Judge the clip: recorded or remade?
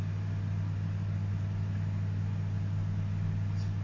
recorded